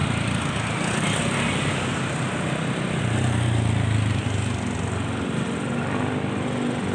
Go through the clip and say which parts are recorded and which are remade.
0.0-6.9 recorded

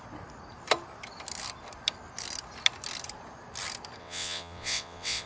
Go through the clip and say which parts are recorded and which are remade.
0.0-4.0 recorded; 4.0-5.3 remade

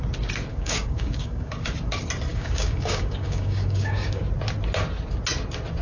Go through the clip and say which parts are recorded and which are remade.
0.0-0.5 recorded; 0.5-1.5 remade; 1.5-2.3 recorded; 2.3-4.2 remade; 4.2-5.8 recorded

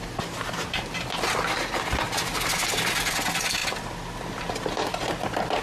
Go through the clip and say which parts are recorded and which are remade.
0.0-5.6 recorded